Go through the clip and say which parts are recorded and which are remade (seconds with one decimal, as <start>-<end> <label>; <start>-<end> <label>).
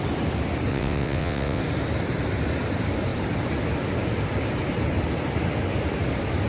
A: 0.0-0.7 recorded; 0.7-1.6 remade; 1.6-6.5 recorded